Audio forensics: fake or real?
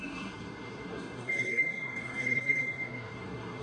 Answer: fake